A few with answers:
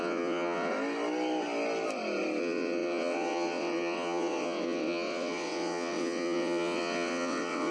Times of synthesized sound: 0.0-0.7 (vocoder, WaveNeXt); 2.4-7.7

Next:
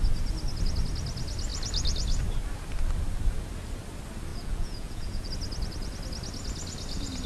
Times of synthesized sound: 4.3-5.3 (vocoder, Vocos)

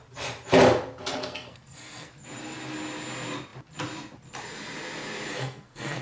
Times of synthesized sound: 1.1-2.1 (codec, SNAC); 5.3-6.0

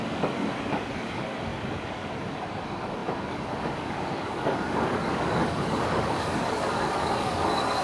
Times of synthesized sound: 0.0-7.8 (codec, DAC)

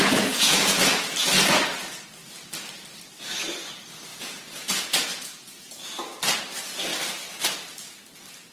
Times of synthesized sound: 0.0-1.0 (vocoder, Vocos); 4.1-6.2